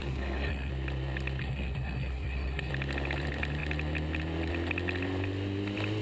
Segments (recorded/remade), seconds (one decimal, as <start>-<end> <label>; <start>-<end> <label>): 0.0-0.7 remade; 0.7-1.4 recorded; 1.4-2.7 remade; 2.7-6.0 recorded